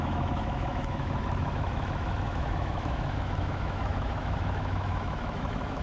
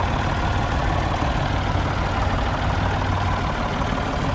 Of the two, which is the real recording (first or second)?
second